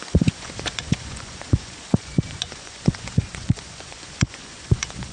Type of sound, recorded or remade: remade